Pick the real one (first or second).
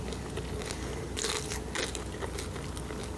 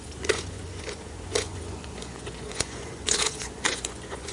first